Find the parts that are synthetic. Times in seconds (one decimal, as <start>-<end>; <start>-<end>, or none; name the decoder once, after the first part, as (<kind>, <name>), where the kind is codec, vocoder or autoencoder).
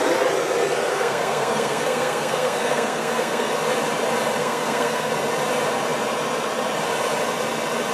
0.9-3.5 (codec, SNAC); 4.4-5.1